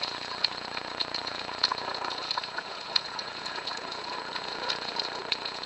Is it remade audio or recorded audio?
remade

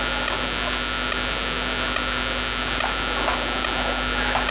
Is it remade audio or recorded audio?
recorded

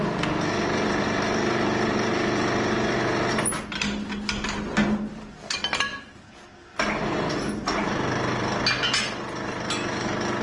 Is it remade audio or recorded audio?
recorded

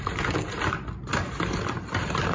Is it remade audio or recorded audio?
recorded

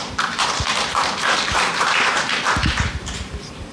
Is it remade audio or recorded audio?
remade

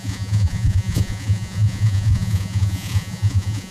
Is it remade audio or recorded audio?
remade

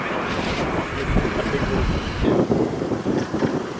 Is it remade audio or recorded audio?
remade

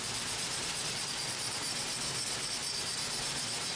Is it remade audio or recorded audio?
recorded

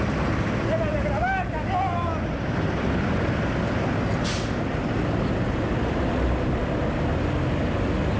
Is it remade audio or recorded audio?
recorded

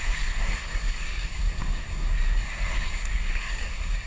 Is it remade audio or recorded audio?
remade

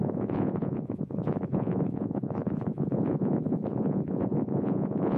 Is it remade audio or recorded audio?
remade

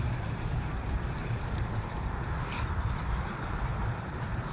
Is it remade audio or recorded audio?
remade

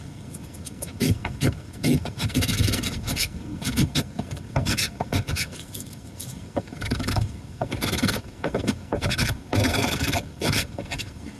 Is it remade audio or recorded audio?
remade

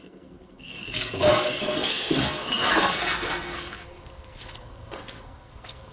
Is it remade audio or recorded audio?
remade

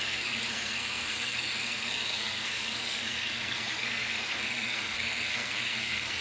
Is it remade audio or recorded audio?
remade